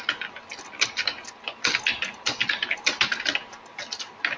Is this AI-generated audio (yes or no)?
no